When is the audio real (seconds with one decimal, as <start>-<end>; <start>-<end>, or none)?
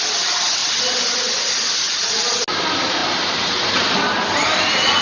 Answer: 0.0-5.0